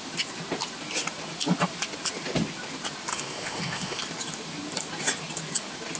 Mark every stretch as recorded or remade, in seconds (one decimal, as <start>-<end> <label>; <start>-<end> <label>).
0.0-3.1 recorded; 3.1-4.0 remade; 4.0-6.0 recorded